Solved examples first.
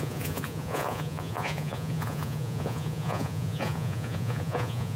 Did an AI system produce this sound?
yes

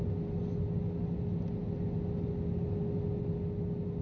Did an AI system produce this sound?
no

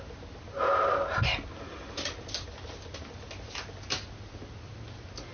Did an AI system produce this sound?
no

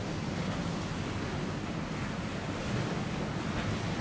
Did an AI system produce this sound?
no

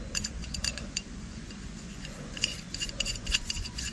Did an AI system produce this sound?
yes